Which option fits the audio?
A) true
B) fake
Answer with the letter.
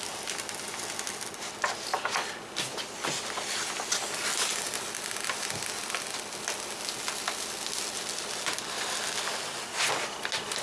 A